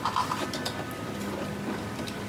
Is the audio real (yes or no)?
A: yes